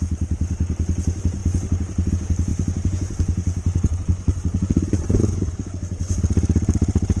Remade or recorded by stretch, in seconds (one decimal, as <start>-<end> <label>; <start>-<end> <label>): 0.0-2.5 recorded; 2.5-6.2 remade; 6.2-7.2 recorded